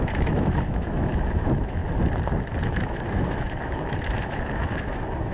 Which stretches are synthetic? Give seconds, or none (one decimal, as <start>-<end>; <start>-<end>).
0.0-1.8; 2.6-5.3